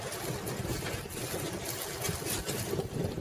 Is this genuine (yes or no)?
yes